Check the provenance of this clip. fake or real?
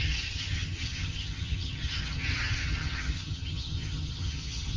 fake